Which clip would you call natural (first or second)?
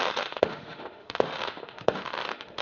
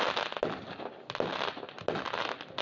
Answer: second